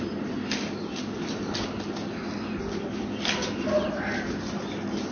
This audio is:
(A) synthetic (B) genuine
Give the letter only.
B